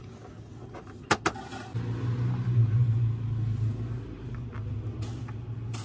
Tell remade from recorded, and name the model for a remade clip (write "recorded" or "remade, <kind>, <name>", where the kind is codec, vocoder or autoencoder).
recorded